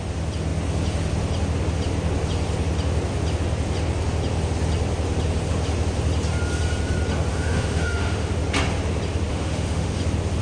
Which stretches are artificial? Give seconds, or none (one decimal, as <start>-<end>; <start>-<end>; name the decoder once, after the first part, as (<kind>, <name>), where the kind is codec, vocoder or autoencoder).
7.3-8.3 (autoencoder, DAC-VAE); 9.3-10.0